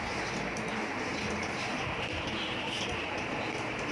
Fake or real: real